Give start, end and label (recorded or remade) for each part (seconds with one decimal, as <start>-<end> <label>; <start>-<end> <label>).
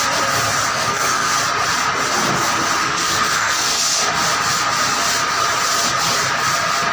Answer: 0.0-0.7 recorded; 0.7-1.3 remade; 1.3-2.8 recorded; 2.8-3.8 remade; 3.8-6.9 recorded